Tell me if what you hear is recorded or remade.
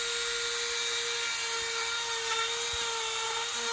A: recorded